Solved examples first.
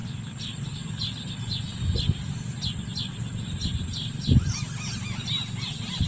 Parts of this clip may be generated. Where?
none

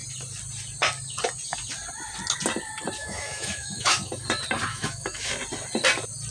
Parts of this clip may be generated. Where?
3.0-4.1 (autoencoder, DAC-VAE); 4.7-5.3

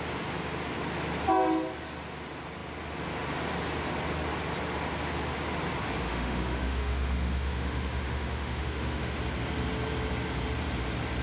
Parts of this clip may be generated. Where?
6.0-9.2 (autoencoder, DAC-VAE)